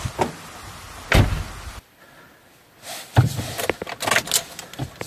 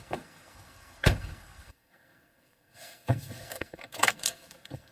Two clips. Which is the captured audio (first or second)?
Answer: first